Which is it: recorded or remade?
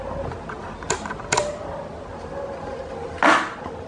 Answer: recorded